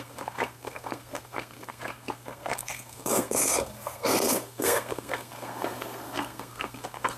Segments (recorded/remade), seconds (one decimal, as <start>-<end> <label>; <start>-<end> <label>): 0.0-7.2 remade